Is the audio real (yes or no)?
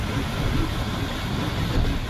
yes